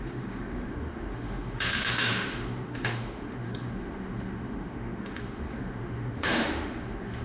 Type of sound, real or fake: fake